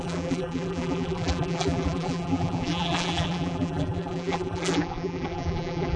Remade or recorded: remade